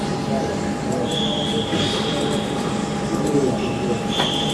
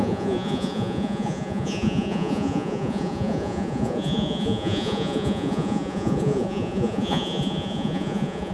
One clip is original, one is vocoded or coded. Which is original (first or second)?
first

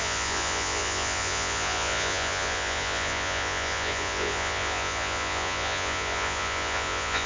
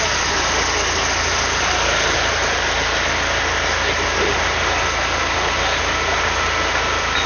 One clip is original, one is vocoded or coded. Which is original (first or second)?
second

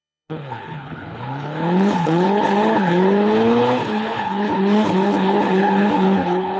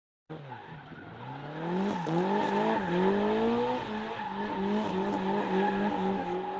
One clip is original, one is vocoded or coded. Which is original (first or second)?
second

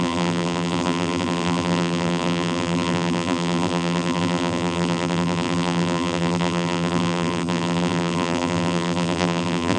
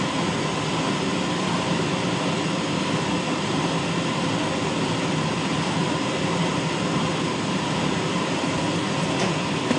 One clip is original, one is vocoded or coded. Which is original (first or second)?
second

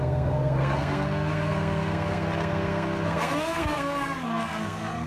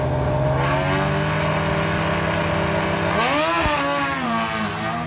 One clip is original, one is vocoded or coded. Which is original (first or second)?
second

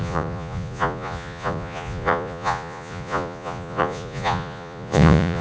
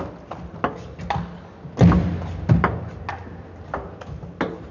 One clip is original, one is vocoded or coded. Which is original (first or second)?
second